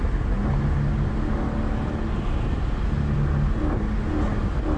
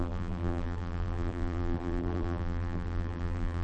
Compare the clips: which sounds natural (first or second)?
first